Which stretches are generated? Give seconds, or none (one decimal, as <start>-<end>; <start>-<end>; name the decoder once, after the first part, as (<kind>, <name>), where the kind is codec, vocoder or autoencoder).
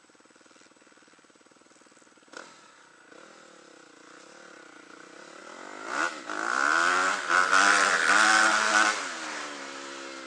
none